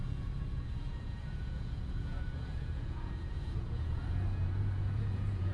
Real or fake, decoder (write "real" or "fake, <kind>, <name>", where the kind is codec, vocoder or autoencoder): fake, vocoder, Vocos